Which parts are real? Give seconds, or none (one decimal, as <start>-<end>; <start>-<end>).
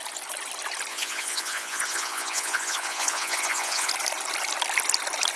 0.0-0.9; 3.9-5.4